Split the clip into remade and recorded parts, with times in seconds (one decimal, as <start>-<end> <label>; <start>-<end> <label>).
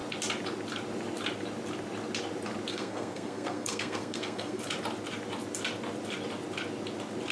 0.0-2.7 recorded; 2.7-4.6 remade; 4.6-7.3 recorded